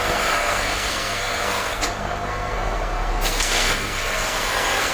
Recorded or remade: remade